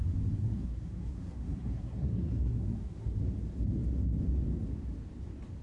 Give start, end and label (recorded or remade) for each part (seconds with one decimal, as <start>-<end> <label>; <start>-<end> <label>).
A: 0.0-0.4 recorded; 0.4-3.2 remade; 3.2-5.6 recorded